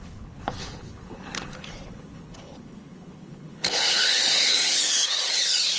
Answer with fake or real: fake